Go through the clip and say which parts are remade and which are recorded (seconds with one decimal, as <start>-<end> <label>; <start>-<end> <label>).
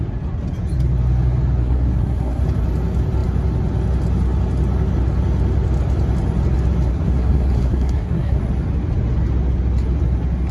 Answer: 0.0-1.6 recorded; 1.6-2.4 remade; 2.4-6.9 recorded; 6.9-8.4 remade; 8.4-10.5 recorded